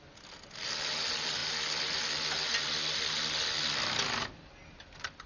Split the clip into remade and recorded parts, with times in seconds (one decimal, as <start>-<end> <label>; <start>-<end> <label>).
0.0-5.3 recorded